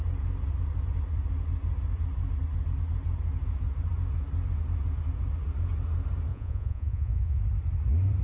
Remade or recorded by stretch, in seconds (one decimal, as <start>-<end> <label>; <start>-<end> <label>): 0.0-6.3 recorded; 6.3-7.4 remade; 7.4-8.2 recorded